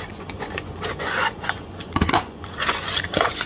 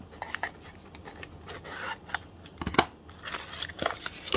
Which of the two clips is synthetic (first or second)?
first